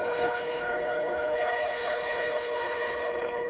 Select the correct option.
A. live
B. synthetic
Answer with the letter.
B